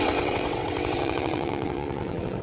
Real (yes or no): no